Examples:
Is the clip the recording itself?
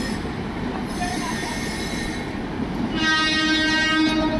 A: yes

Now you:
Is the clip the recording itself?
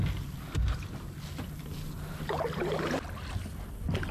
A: yes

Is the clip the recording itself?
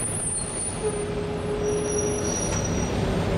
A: yes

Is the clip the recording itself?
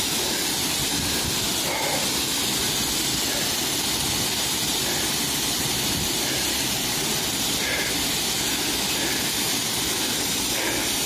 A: yes